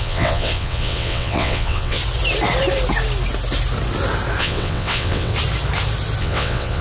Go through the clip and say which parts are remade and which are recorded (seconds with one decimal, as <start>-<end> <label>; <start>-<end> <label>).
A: 0.0-2.0 remade; 2.0-4.4 recorded; 4.4-5.3 remade; 5.3-6.2 recorded; 6.2-6.8 remade